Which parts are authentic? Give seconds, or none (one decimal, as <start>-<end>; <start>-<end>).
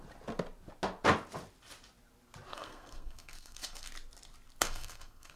0.0-2.5; 3.9-4.6